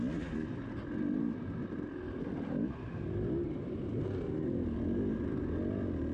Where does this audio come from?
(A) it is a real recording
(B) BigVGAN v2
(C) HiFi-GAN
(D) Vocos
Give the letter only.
A